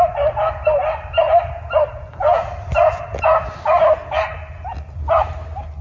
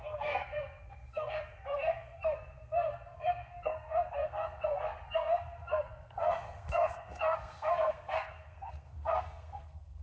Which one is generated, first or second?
second